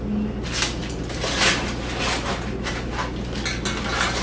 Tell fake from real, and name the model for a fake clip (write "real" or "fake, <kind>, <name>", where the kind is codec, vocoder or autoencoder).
real